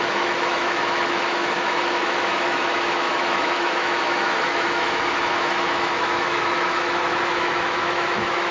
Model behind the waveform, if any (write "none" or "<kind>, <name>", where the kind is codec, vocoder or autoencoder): autoencoder, DAC-VAE